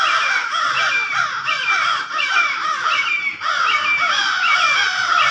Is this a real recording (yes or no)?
no